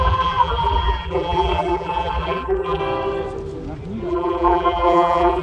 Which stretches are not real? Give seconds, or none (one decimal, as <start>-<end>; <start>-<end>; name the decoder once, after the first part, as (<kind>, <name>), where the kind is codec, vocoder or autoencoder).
0.0-2.8 (vocoder, BigVGAN v2); 4.1-5.4